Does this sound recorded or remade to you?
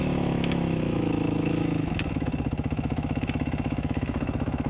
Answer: remade